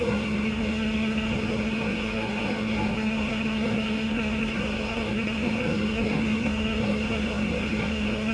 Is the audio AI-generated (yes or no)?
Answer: yes